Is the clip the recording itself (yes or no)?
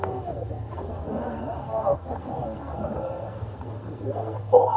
no